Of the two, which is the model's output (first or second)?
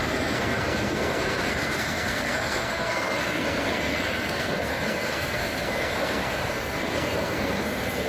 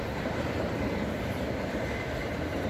first